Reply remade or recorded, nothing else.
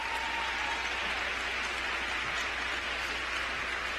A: recorded